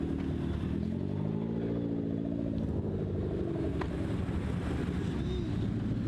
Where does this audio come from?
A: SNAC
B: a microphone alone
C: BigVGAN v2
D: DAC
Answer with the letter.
B